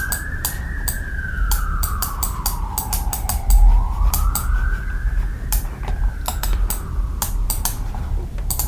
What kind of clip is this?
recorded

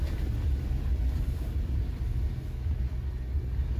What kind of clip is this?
recorded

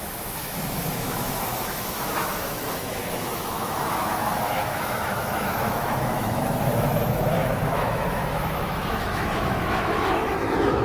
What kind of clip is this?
remade